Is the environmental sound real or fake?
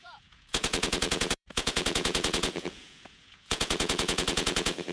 fake